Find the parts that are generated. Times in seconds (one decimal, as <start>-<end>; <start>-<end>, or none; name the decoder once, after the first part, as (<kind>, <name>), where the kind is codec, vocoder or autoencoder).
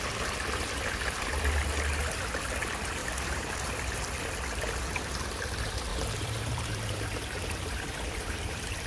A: 3.0-3.7 (vocoder, BigVGAN v2); 5.9-8.9